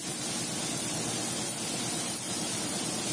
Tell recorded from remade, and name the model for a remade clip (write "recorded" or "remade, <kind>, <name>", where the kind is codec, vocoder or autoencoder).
recorded